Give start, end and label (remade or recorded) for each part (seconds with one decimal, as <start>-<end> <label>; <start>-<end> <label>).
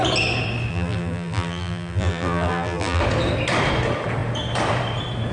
0.0-0.7 recorded; 0.7-3.0 remade; 3.0-5.3 recorded